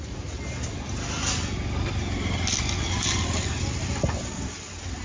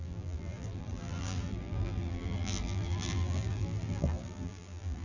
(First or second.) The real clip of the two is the first